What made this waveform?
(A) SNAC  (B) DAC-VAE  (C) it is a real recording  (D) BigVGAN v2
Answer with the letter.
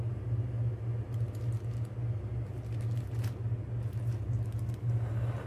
C